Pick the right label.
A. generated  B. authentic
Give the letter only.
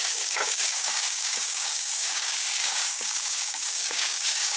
A